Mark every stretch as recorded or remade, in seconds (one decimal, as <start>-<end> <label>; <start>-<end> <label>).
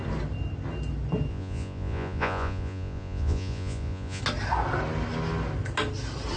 0.0-1.3 recorded; 1.3-4.2 remade; 4.2-6.4 recorded